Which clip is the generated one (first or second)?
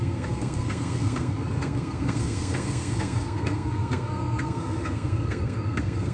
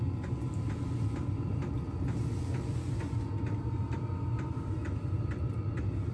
first